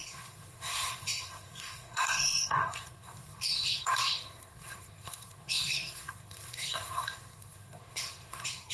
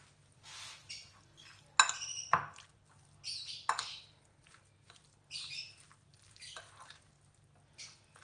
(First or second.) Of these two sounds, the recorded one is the second